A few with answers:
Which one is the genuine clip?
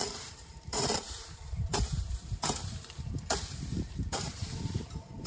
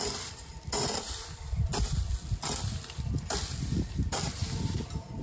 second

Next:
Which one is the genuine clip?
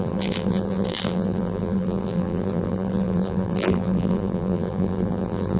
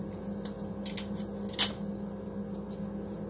second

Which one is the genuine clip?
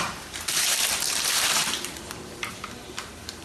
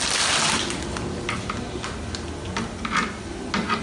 second